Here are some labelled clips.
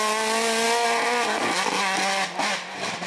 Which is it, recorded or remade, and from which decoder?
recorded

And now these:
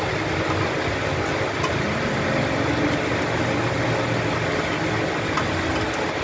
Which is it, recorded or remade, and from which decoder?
recorded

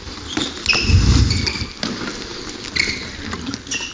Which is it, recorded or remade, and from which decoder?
recorded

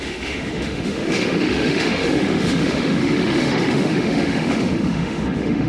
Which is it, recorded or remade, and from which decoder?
remade, autoencoder, DAC-VAE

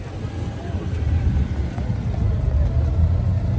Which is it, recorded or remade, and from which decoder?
recorded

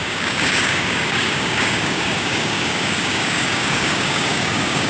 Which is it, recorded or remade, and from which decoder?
remade, codec, DAC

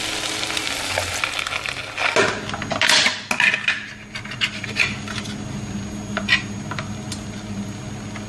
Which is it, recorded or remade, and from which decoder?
recorded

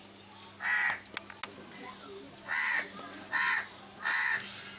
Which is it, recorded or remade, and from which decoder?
recorded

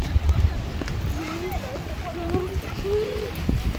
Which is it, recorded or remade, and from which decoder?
recorded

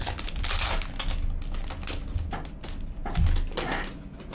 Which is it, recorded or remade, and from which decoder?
recorded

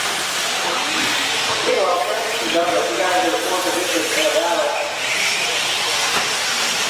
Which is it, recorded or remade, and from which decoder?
recorded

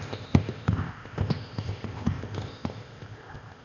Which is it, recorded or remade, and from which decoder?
remade, codec, ZipCodec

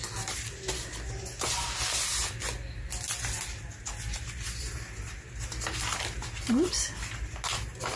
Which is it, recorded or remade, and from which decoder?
recorded